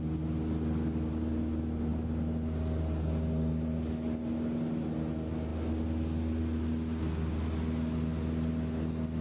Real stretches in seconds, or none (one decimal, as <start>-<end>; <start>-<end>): 0.0-9.2